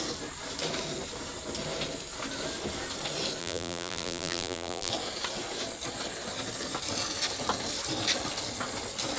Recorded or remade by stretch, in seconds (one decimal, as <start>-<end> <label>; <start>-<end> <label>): 0.0-3.4 recorded; 3.4-4.9 remade; 4.9-9.2 recorded